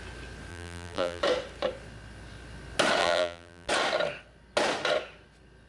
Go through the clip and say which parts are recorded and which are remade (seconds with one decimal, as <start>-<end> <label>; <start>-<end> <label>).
0.0-0.5 recorded; 0.5-1.2 remade; 1.2-3.0 recorded; 3.0-3.7 remade; 3.7-5.7 recorded